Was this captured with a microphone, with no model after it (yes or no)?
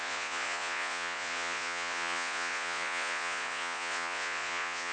no